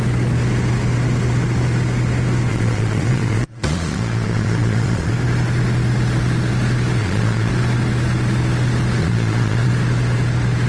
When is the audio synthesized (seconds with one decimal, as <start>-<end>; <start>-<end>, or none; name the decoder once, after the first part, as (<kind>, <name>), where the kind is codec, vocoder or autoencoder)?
2.5-5.1 (vocoder, Vocos); 7.0-7.5; 9.0-9.7